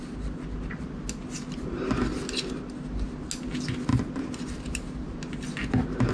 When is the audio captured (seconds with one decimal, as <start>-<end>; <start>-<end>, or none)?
0.0-6.1